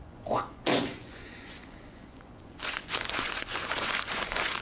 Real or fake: fake